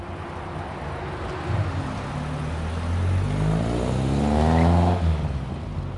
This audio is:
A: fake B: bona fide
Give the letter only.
B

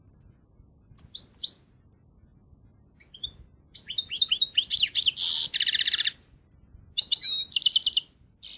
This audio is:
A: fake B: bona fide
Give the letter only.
B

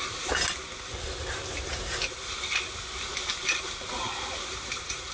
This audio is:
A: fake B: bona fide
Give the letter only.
B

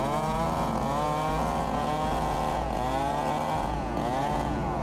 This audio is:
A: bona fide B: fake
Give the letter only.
B